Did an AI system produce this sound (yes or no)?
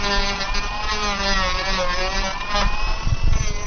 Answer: no